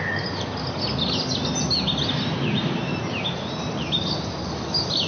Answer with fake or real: real